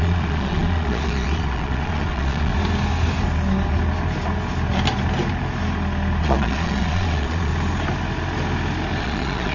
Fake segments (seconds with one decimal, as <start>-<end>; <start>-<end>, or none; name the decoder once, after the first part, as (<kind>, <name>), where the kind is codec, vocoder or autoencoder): 0.0-2.5 (vocoder, Vocos); 6.2-7.5; 9.0-9.5